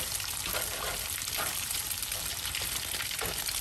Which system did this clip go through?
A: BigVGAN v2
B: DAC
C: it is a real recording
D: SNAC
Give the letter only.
C